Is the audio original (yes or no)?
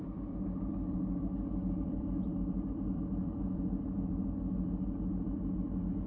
no